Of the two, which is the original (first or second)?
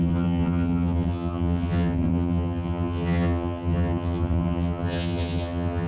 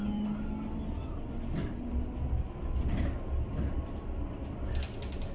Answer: second